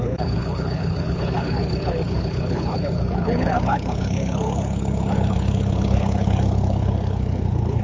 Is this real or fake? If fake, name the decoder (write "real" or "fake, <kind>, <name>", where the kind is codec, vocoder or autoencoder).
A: fake, codec, HILCodec